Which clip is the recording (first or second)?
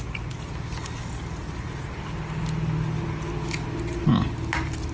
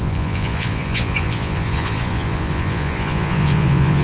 first